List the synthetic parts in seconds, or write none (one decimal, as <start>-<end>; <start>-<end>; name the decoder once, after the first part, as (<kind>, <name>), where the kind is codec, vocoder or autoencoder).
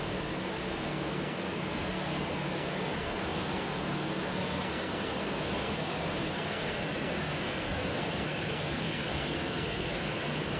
0.0-10.6 (codec, SNAC)